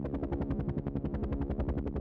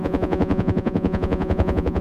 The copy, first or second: second